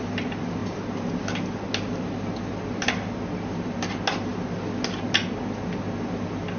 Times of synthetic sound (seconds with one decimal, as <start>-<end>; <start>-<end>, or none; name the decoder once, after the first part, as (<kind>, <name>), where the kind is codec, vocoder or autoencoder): none